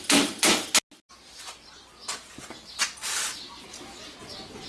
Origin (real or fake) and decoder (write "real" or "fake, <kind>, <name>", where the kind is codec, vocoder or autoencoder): real